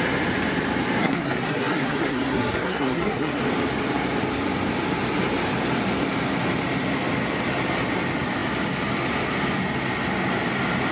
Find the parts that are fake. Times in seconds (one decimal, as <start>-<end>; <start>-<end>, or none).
1.0-3.4